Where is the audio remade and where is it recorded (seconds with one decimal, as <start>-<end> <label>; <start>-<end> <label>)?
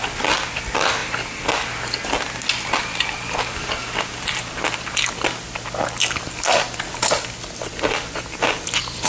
0.0-9.1 recorded